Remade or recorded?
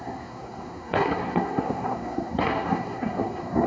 remade